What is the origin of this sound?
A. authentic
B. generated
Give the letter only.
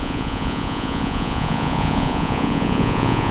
B